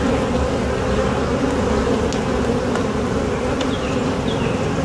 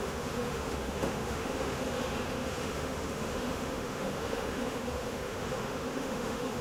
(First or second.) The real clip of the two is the first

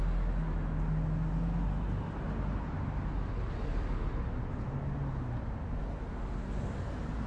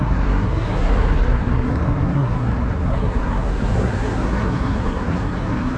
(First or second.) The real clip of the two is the first